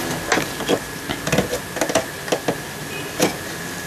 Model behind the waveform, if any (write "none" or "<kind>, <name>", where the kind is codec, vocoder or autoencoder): none